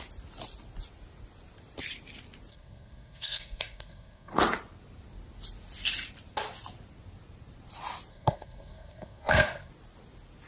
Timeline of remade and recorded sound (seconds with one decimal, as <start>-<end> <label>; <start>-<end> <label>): 0.0-2.5 recorded; 2.5-4.3 remade; 4.3-8.1 recorded; 8.1-9.7 remade; 9.7-10.5 recorded